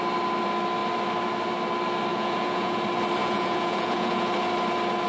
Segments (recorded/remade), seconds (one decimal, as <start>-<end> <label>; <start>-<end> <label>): 0.0-2.1 recorded; 2.1-2.8 remade; 2.8-3.2 recorded; 3.2-4.3 remade; 4.3-5.1 recorded